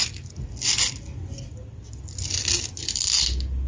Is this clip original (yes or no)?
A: yes